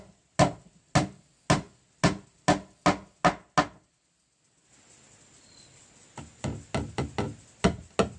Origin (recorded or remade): recorded